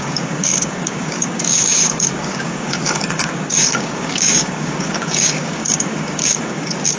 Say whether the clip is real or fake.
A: fake